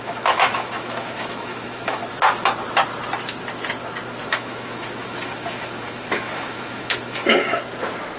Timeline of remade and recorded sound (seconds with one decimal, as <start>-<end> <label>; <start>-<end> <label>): 0.0-2.0 remade; 2.0-4.3 recorded; 4.3-7.6 remade; 7.6-8.2 recorded